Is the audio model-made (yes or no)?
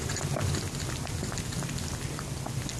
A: no